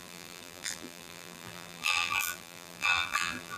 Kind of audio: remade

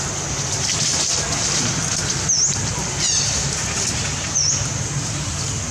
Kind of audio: recorded